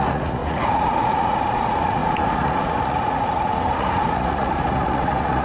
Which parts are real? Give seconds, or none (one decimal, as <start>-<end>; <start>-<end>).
none